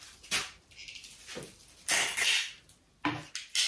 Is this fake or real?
real